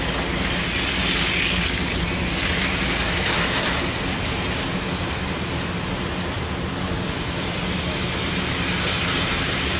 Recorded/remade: recorded